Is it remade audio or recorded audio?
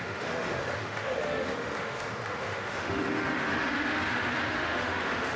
remade